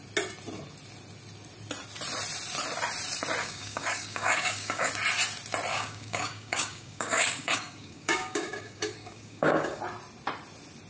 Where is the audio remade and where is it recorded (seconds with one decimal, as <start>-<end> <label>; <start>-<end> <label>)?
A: 0.0-3.4 recorded; 3.4-4.9 remade; 4.9-5.7 recorded; 5.7-9.8 remade; 9.8-10.9 recorded